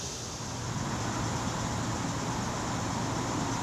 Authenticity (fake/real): real